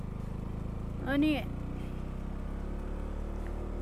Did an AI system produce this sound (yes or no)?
no